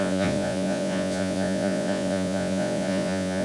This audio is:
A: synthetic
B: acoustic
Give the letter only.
A